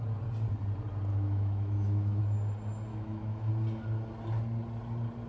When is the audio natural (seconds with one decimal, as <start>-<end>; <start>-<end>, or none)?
0.0-1.1; 2.2-2.9; 3.5-5.3